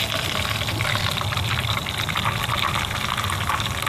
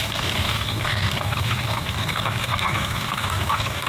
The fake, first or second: second